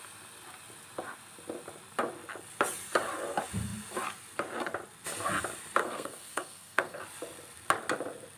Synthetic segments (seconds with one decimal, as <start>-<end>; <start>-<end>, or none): 5.8-7.0